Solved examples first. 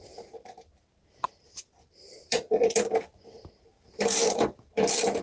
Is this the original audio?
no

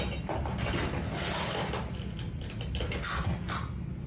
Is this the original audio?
yes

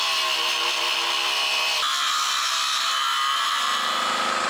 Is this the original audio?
yes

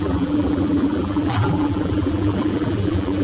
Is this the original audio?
no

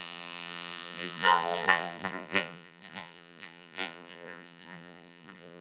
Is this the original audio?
no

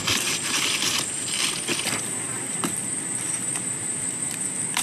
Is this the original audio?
no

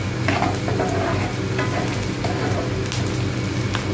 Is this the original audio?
yes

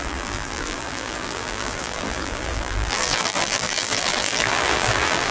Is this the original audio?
no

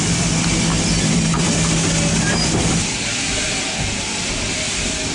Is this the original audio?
no